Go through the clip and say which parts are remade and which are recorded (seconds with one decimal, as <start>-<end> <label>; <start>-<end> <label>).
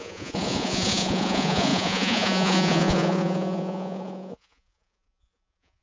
0.0-5.8 remade